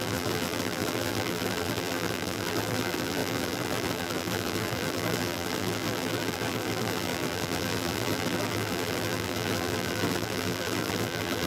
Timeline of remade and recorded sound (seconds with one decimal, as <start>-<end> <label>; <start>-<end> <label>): 0.0-11.5 remade